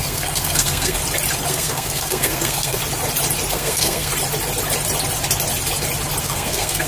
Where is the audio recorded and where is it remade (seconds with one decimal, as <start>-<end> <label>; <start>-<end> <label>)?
0.0-1.0 remade; 1.0-1.5 recorded; 1.5-2.8 remade; 2.8-3.5 recorded; 3.5-4.1 remade; 4.1-6.2 recorded; 6.2-6.9 remade